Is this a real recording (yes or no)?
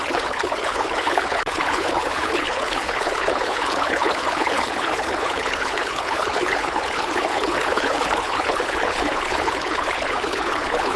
no